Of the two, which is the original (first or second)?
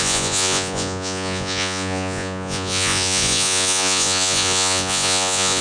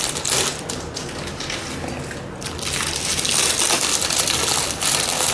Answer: second